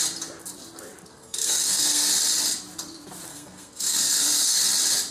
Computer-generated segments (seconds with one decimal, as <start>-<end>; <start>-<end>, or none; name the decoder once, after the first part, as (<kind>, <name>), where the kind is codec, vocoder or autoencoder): 1.1-2.1 (codec, SNAC); 3.3-4.6

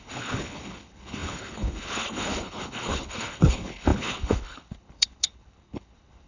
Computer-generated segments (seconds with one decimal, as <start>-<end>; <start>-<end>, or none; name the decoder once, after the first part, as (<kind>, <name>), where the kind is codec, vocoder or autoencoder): 0.0-6.3 (codec, HILCodec)